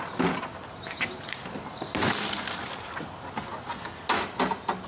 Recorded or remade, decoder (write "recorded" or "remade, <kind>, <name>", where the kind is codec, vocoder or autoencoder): recorded